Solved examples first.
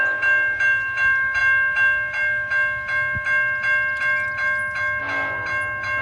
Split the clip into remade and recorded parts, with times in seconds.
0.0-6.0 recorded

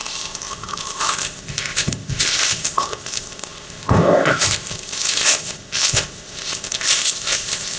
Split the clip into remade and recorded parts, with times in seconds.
0.0-7.8 remade